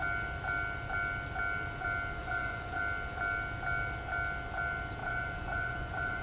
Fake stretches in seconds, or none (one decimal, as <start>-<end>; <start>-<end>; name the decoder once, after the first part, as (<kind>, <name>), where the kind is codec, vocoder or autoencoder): 2.2-2.8 (vocoder, Vocos); 5.0-6.2